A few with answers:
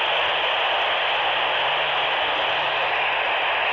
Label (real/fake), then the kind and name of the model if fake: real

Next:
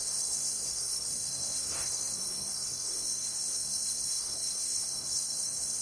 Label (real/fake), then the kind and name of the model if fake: fake, codec, SNAC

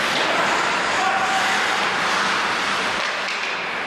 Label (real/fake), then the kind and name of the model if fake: real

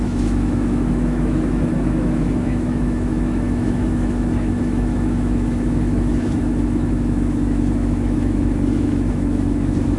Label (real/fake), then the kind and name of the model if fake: fake, autoencoder, DAC-VAE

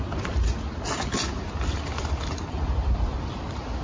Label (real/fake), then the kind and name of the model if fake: real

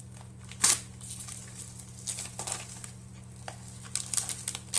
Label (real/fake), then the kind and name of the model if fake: real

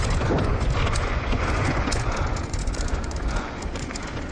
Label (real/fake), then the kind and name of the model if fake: fake, vocoder, Vocos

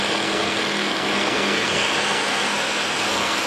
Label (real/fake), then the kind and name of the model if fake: fake, codec, SNAC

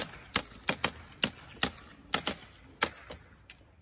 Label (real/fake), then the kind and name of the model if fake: real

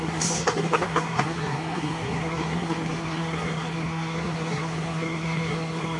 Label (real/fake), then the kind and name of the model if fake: fake, codec, SNAC